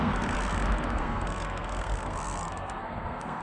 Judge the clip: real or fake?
fake